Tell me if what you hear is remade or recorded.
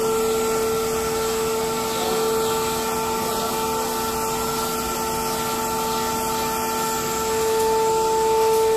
recorded